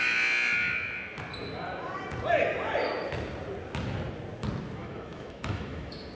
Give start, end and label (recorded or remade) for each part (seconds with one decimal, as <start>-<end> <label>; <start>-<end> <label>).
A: 0.0-4.8 recorded; 4.8-6.1 remade